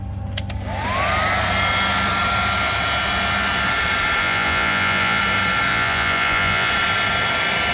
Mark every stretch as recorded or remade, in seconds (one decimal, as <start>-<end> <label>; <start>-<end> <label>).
0.0-4.2 recorded; 4.2-5.2 remade; 5.2-5.7 recorded; 5.7-6.7 remade; 6.7-7.7 recorded